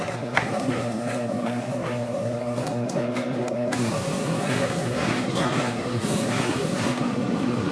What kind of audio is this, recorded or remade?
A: remade